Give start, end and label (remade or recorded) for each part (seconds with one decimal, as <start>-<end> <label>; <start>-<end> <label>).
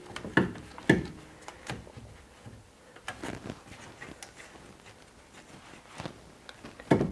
0.0-7.1 recorded